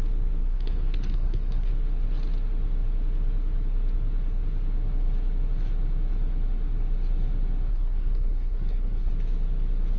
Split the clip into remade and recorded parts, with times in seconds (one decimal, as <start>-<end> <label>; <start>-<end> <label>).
0.0-0.4 recorded; 0.4-1.7 remade; 1.7-7.7 recorded; 7.7-9.1 remade; 9.1-10.0 recorded